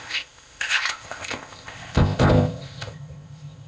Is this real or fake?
fake